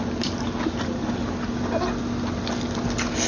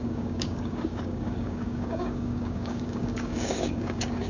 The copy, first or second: second